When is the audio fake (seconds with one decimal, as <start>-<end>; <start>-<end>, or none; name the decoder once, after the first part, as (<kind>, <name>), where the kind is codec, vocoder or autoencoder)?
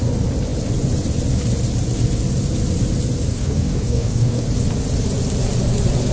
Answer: 3.3-4.4 (codec, DAC)